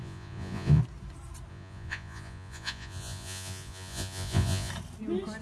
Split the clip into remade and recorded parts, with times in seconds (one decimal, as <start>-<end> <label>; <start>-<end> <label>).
0.0-0.8 remade; 0.8-1.5 recorded; 1.5-4.7 remade; 4.7-5.4 recorded